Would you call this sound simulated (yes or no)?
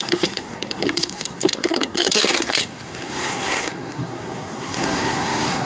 yes